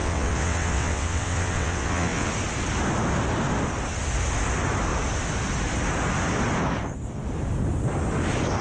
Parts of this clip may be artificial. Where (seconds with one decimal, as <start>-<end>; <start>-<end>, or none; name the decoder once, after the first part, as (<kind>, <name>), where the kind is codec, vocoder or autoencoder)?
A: 0.0-2.3 (vocoder, WaveNeXt)